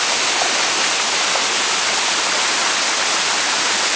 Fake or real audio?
real